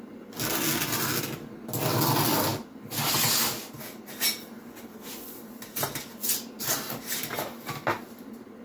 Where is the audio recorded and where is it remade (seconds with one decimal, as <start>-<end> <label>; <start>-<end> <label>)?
0.0-8.6 recorded

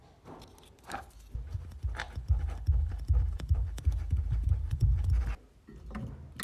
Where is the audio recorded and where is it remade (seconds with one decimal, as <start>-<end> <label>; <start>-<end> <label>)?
0.0-1.5 recorded; 1.5-5.2 remade; 5.2-6.4 recorded

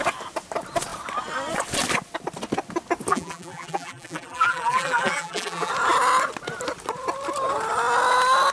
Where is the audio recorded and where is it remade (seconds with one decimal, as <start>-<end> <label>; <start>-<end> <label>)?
0.0-3.1 recorded; 3.1-5.7 remade; 5.7-8.5 recorded